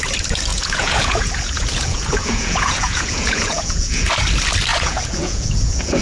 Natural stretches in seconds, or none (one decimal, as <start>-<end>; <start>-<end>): 0.0-0.5; 4.1-4.7